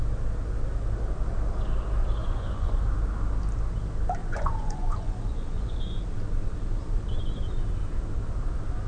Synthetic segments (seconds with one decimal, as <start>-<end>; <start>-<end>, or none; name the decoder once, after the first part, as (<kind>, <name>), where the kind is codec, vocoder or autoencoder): 2.2-2.8 (vocoder, Vocos); 4.2-5.8